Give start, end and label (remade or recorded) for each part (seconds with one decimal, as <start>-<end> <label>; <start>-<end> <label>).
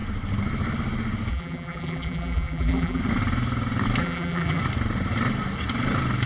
0.0-1.3 recorded; 1.3-3.0 remade; 3.0-4.0 recorded; 4.0-4.6 remade; 4.6-6.3 recorded